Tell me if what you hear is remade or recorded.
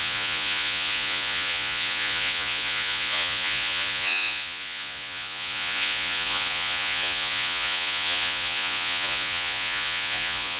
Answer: remade